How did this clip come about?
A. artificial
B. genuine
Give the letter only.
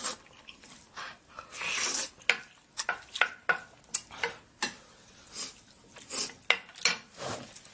B